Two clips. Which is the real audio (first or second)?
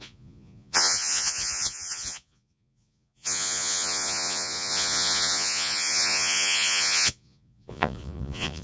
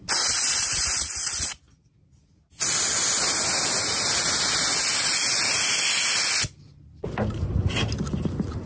second